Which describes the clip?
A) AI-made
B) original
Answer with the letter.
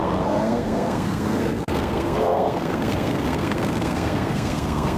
A